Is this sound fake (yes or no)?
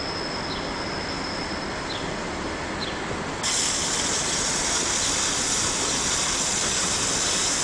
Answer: no